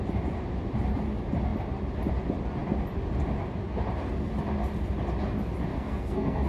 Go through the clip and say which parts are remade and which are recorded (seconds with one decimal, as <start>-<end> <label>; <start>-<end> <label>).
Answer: 0.0-5.7 recorded; 5.7-6.5 remade